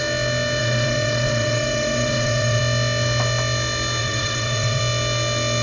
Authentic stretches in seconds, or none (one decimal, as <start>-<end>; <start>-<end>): 0.0-0.6; 2.6-4.0; 4.8-5.6